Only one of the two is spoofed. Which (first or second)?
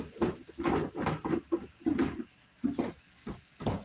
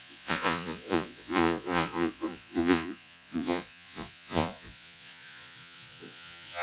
second